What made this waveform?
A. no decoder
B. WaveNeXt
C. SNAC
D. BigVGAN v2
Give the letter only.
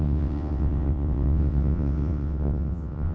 B